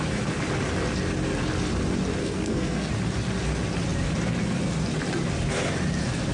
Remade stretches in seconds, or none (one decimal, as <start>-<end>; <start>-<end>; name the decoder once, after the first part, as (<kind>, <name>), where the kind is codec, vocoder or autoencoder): 2.2-2.9 (codec, SNAC)